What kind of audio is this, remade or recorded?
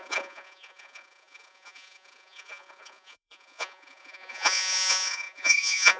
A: remade